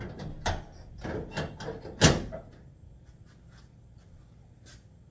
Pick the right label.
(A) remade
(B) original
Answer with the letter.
B